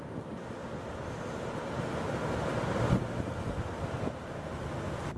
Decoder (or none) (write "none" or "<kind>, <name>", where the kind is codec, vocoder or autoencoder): none